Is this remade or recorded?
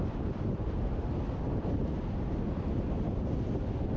recorded